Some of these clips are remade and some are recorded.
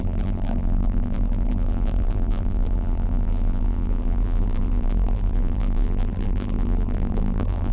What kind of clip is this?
remade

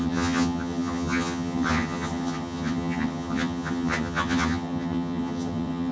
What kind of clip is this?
remade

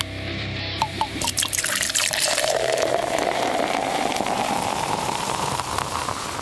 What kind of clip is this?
remade